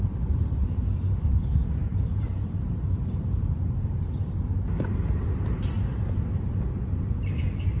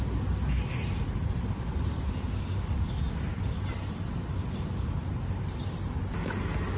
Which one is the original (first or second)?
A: second